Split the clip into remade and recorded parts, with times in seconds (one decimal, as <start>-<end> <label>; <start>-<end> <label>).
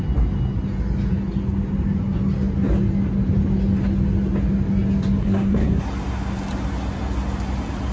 0.0-5.2 recorded; 5.2-5.8 remade; 5.8-7.9 recorded